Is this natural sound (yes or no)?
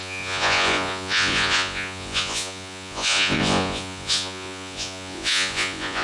no